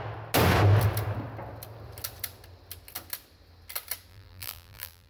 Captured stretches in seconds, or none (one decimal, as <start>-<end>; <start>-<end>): 0.0-4.1